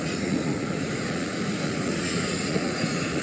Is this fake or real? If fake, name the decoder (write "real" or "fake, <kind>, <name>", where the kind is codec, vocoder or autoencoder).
fake, vocoder, Vocos